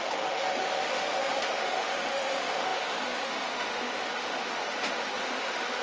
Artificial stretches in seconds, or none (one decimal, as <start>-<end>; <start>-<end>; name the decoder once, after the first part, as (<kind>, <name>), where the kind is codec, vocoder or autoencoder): 0.0-5.8 (autoencoder, DAC-VAE)